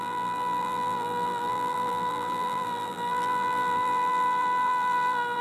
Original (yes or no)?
no